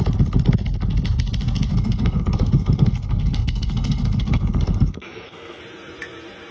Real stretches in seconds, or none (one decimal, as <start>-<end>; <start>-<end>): 0.0-1.7; 5.6-6.5